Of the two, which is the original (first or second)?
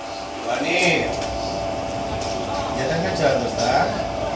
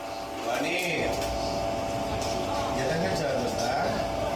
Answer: second